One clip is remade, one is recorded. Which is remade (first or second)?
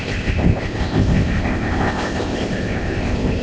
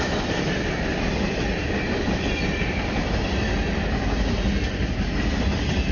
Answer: first